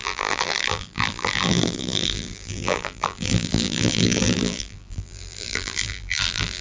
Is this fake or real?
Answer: fake